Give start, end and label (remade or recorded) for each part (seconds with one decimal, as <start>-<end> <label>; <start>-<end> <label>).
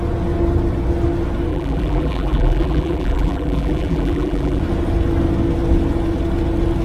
0.0-1.5 recorded; 1.5-4.6 remade; 4.6-6.8 recorded